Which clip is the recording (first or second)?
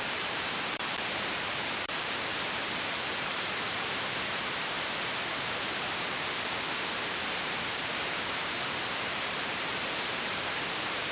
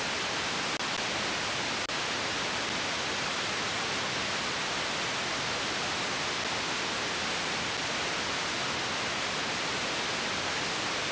second